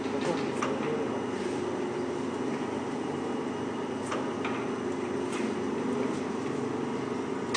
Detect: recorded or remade recorded